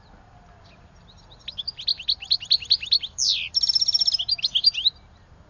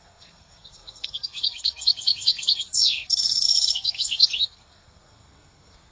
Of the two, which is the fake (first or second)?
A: second